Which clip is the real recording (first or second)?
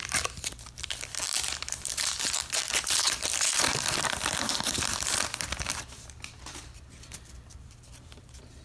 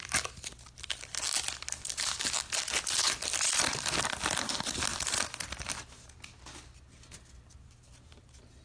second